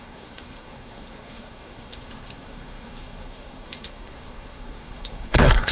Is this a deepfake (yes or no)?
yes